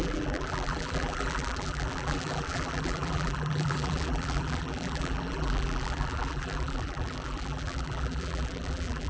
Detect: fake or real fake